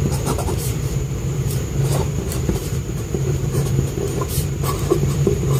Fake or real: fake